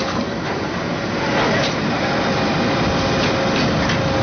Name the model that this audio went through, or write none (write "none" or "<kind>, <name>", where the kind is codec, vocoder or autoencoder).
none